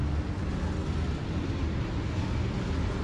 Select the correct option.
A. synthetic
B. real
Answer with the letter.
B